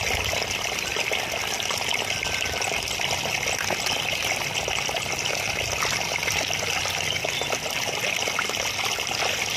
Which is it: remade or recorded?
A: recorded